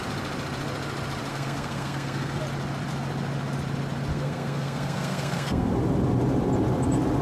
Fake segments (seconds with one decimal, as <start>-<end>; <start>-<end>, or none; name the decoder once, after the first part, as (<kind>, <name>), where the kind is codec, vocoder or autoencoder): 1.3-2.4 (codec, SNAC); 4.1-5.7